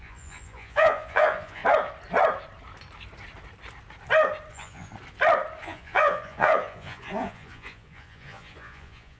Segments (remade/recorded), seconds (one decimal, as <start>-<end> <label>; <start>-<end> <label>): 0.0-1.6 remade; 1.6-4.5 recorded; 4.5-4.9 remade; 4.9-5.6 recorded; 5.6-9.2 remade

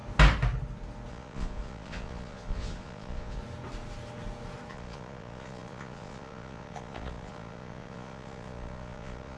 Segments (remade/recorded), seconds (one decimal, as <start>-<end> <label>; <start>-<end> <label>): 0.0-1.1 recorded; 1.1-3.4 remade; 3.4-4.7 recorded; 4.7-9.4 remade

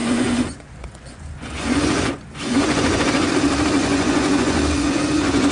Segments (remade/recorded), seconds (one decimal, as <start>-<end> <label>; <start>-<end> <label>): 0.0-3.3 remade; 3.3-3.8 recorded; 3.8-5.5 remade

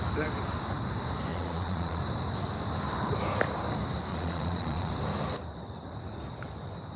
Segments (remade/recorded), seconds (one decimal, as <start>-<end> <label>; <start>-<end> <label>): 0.0-1.3 recorded; 1.3-2.0 remade; 2.0-4.1 recorded; 4.1-4.9 remade; 4.9-7.0 recorded

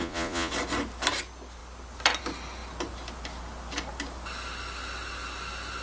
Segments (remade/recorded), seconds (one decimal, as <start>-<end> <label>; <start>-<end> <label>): 0.0-0.5 remade; 0.5-5.8 recorded